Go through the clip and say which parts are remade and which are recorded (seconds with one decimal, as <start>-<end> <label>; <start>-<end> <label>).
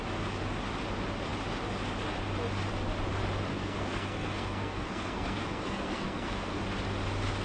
0.0-3.5 recorded; 3.5-6.6 remade; 6.6-7.4 recorded